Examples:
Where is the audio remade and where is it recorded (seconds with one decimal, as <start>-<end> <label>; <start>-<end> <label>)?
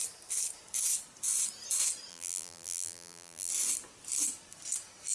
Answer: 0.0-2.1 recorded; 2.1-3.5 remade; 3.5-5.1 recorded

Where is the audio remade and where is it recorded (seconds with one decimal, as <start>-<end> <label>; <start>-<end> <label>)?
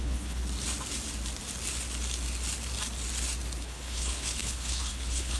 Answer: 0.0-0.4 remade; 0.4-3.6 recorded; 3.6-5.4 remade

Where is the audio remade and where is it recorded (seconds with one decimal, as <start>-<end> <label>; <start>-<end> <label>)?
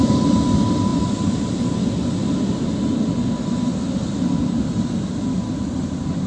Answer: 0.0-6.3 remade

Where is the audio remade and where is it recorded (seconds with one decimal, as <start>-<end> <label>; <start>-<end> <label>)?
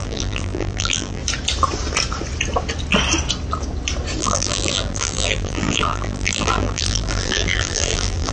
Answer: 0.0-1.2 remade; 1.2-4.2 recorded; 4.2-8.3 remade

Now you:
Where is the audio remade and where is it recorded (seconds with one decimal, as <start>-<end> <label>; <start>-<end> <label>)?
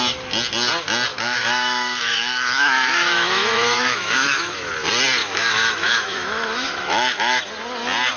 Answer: 0.0-1.1 recorded; 1.1-4.7 remade; 4.7-5.2 recorded; 5.2-7.4 remade; 7.4-8.2 recorded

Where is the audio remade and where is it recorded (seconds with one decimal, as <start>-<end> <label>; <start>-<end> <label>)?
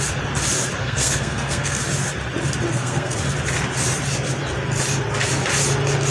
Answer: 0.0-0.8 recorded; 0.8-1.8 remade; 1.8-2.7 recorded; 2.7-3.2 remade; 3.2-6.1 recorded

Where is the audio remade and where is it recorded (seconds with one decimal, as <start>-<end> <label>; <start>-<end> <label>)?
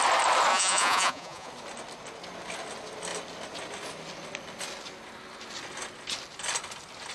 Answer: 0.0-0.5 recorded; 0.5-1.5 remade; 1.5-7.1 recorded